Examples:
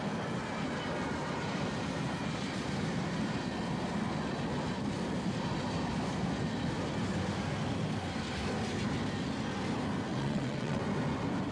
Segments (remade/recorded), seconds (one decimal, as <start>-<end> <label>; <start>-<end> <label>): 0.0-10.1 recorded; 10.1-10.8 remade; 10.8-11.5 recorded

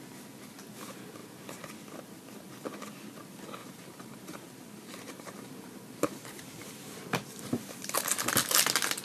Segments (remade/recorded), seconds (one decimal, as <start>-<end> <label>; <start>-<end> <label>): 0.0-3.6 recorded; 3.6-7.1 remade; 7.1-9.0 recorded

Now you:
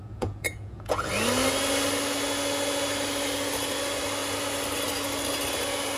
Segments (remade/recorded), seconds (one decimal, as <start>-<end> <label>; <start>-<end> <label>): 0.0-1.1 remade; 1.1-6.0 recorded